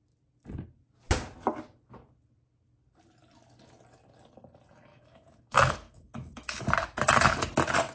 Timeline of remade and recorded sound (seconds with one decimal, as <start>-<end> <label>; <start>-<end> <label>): 0.0-4.9 recorded; 4.9-6.6 remade; 6.6-7.9 recorded